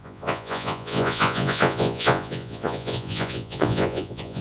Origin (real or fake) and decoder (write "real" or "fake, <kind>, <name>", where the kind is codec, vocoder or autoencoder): fake, vocoder, Vocos